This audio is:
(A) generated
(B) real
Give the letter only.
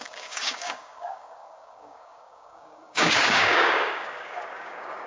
A